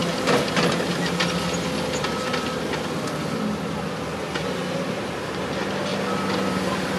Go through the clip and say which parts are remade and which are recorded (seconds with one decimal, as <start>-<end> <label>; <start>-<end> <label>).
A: 0.0-5.9 recorded; 5.9-7.0 remade